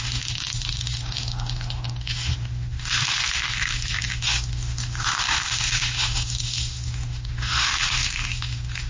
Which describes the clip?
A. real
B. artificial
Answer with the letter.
B